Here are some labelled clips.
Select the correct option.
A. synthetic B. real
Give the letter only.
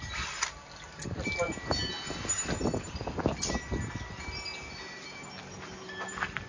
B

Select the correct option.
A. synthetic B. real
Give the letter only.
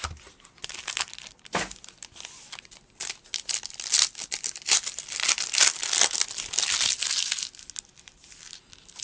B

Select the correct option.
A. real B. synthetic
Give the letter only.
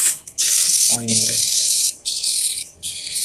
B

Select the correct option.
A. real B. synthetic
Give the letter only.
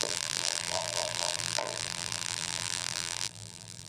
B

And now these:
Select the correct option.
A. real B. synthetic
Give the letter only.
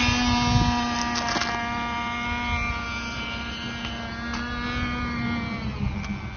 A